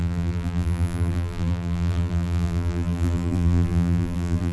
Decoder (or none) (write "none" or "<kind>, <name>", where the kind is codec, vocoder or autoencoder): vocoder, BigVGAN v2